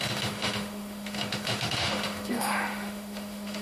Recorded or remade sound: remade